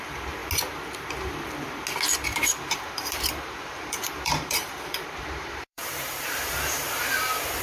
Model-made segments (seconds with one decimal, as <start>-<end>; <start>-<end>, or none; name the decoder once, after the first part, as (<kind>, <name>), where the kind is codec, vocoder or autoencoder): 2.3-6.9 (vocoder, BigVGAN v2)